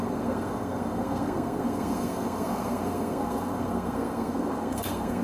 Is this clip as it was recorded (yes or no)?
no